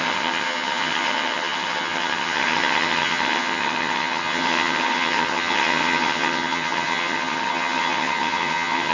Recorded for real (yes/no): no